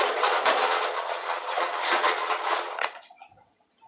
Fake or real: fake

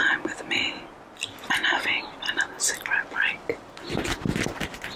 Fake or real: real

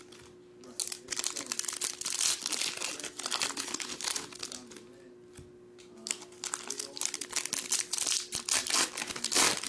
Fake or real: real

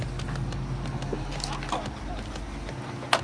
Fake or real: real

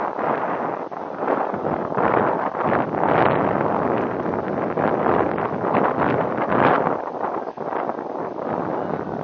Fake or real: real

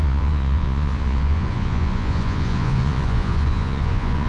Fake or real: fake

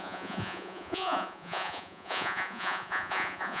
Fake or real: fake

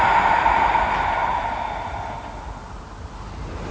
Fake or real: real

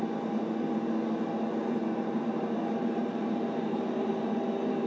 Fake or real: real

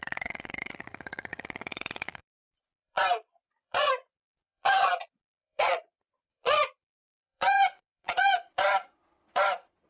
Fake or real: fake